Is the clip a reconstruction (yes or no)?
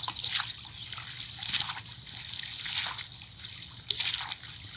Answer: no